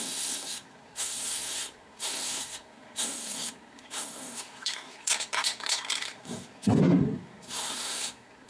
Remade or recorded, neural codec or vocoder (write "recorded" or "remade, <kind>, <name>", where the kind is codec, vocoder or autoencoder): remade, codec, SNAC